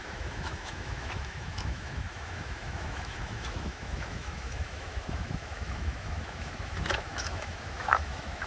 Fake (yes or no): yes